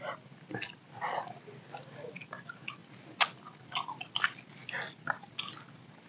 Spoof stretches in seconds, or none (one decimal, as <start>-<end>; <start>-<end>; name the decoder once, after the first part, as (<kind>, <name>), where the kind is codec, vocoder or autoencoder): none